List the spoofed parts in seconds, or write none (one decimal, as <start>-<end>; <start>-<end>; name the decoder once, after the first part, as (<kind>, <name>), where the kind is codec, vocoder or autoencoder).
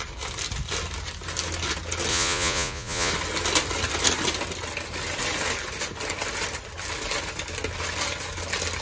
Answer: 2.1-3.1 (vocoder, Vocos)